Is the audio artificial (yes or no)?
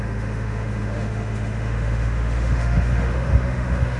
yes